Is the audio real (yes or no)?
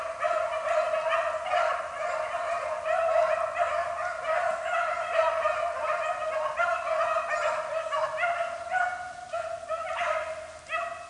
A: yes